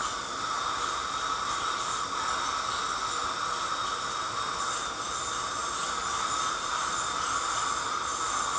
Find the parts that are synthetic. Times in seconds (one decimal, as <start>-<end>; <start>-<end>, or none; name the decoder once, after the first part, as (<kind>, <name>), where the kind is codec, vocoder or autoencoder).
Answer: 5.6-6.7 (vocoder, BigVGAN v2)